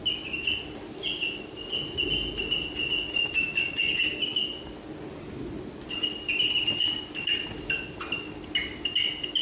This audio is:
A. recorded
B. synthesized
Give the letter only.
A